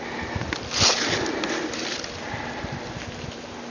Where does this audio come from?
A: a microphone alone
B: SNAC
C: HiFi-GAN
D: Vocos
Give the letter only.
A